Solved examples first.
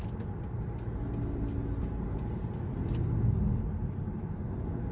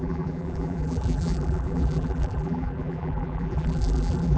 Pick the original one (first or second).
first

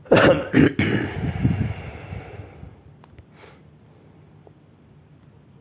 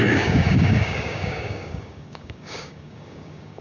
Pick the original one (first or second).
first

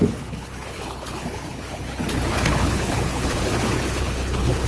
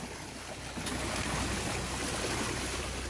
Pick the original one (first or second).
second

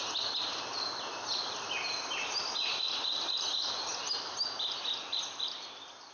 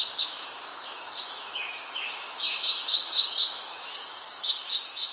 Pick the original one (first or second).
first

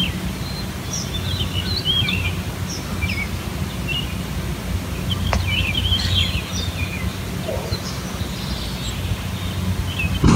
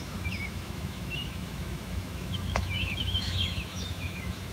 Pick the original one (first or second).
first